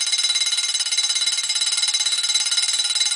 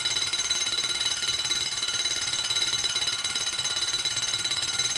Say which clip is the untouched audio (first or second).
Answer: first